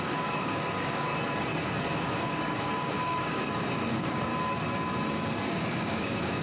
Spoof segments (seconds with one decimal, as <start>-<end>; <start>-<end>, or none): 0.0-1.1; 2.2-4.3; 5.4-6.4